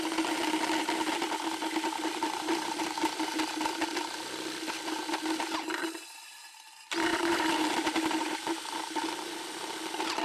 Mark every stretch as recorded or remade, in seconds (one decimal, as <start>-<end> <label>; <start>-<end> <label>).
0.0-7.1 recorded; 7.1-8.6 remade; 8.6-10.2 recorded

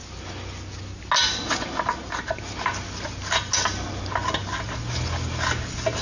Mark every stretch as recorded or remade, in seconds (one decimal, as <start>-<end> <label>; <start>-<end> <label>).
0.0-6.0 recorded